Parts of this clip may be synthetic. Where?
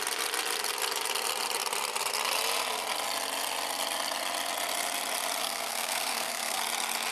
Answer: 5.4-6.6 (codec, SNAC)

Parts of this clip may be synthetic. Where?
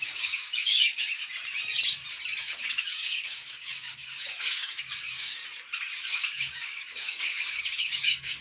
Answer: 0.0-1.2 (codec, DAC); 2.4-5.4; 6.0-8.4